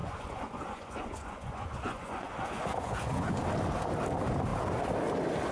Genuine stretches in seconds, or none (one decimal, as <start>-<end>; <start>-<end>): 3.3-5.5